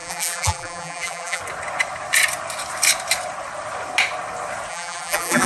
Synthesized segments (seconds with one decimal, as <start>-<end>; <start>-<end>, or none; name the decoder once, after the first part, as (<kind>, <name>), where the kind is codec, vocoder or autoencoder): 0.0-1.4 (vocoder, BigVGAN v2); 4.7-5.5